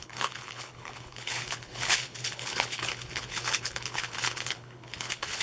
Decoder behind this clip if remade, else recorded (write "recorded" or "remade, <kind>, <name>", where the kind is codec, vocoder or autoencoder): remade, codec, HILCodec